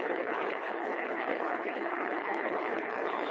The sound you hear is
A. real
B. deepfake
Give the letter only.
B